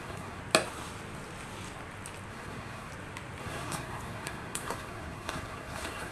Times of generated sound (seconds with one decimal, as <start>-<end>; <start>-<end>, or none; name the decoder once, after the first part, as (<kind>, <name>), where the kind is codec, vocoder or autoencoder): 0.0-0.4 (codec, SNAC); 2.3-2.9; 3.4-6.1